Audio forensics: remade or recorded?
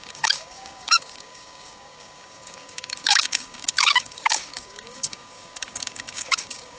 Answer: remade